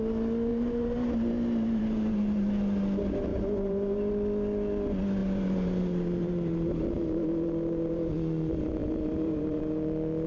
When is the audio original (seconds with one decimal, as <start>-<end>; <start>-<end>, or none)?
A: 0.0-0.5; 2.5-3.3; 4.1-5.2; 8.1-8.8; 9.6-10.3